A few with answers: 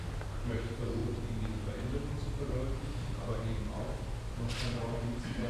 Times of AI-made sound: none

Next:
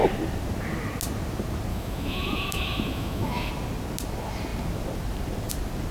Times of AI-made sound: 1.7-3.5 (autoencoder, DAC-VAE)

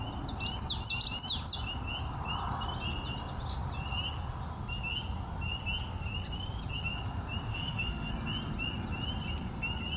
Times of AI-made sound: 7.5-8.1 (autoencoder, DAC-VAE)

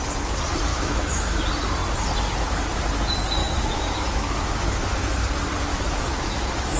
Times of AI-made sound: 0.7-1.4 (autoencoder, DAC-VAE); 3.4-5.2; 5.7-6.8